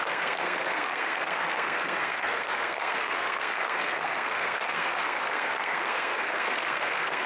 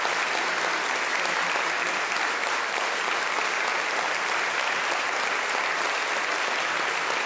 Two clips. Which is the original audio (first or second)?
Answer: second